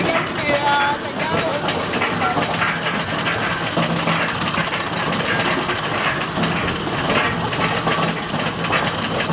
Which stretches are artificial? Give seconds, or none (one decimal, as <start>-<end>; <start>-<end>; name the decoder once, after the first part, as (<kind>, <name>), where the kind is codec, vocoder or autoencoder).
none